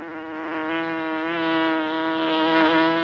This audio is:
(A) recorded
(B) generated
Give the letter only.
A